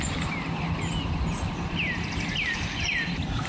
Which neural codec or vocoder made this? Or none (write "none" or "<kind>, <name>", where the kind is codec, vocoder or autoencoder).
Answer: none